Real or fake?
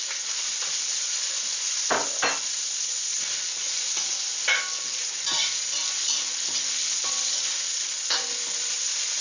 real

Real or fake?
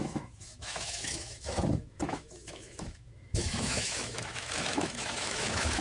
fake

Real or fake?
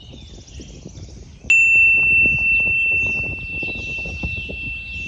real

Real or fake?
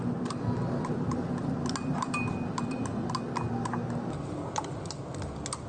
real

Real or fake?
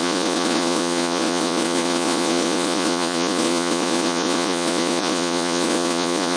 fake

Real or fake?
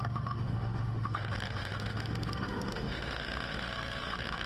fake